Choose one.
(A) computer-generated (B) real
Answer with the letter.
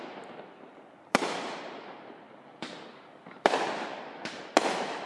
B